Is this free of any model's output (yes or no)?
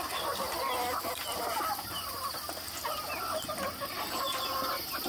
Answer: yes